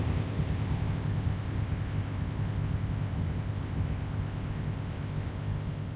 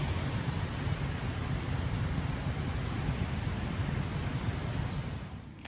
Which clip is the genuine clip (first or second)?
second